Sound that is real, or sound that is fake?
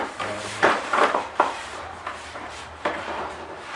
fake